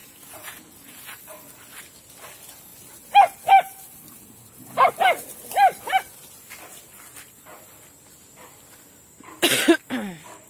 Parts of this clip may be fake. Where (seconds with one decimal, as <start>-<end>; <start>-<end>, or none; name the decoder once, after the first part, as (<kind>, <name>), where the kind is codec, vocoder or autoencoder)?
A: 0.0-1.2 (vocoder, Vocos)